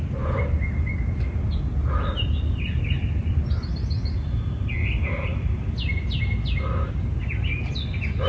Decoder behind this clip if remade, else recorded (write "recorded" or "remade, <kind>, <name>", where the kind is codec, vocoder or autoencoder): recorded